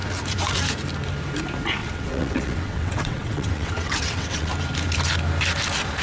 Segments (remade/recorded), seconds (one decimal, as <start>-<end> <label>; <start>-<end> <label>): 0.0-1.8 recorded; 1.8-4.5 remade; 4.5-6.0 recorded